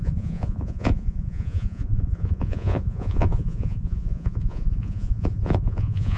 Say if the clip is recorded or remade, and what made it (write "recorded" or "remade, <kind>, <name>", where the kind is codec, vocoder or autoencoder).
remade, vocoder, Vocos